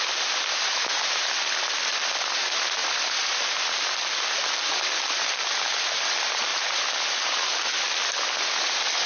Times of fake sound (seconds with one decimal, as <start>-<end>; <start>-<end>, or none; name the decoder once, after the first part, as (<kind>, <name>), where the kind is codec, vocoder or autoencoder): 0.7-1.3 (vocoder, BigVGAN v2); 2.8-3.3